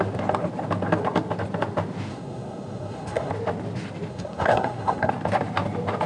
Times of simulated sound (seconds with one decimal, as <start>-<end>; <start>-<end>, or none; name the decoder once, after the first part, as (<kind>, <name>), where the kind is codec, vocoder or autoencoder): 2.1-3.3 (codec, SNAC); 4.1-5.1